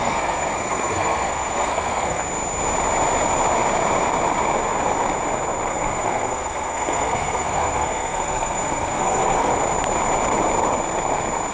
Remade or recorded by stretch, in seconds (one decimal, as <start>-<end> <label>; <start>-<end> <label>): 0.0-2.2 remade; 2.2-5.7 recorded; 5.7-9.5 remade; 9.5-11.5 recorded